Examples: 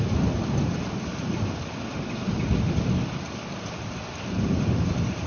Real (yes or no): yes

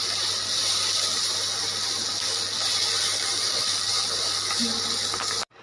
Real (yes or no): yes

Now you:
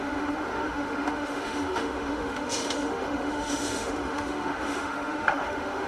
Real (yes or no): no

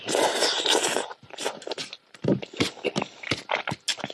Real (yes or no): yes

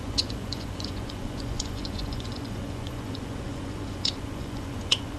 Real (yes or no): no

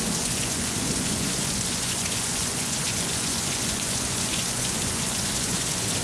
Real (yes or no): no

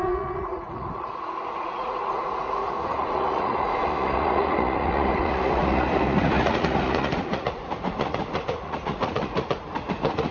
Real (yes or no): no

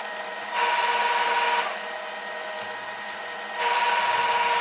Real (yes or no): yes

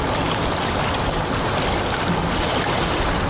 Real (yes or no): yes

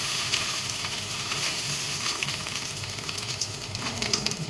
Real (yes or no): no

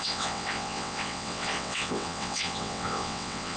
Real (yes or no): no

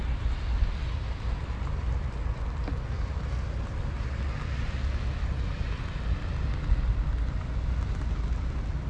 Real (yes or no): yes